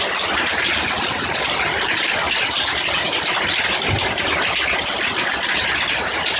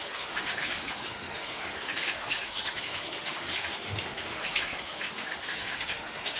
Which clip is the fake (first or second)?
second